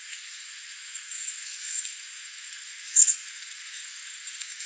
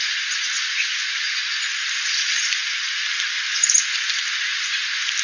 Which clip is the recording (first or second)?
second